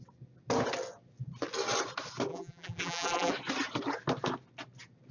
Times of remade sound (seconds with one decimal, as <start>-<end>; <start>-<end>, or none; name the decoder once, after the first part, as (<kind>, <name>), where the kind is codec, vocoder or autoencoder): 2.3-3.3 (vocoder, BigVGAN v2)